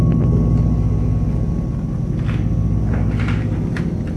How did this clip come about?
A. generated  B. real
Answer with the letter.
B